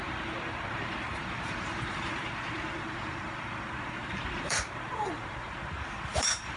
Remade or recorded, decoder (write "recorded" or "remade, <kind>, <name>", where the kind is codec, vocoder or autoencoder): remade, vocoder, BigVGAN v2